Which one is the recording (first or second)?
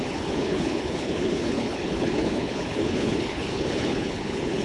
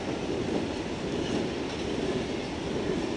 second